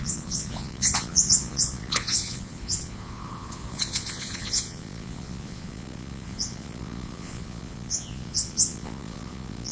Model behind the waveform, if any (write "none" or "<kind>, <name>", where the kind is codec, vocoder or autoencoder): vocoder, Vocos